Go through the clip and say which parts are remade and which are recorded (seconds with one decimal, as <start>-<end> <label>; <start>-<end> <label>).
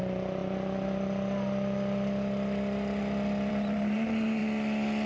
0.0-0.4 remade; 0.4-3.5 recorded; 3.5-4.4 remade; 4.4-5.1 recorded